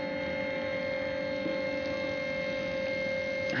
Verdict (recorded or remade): recorded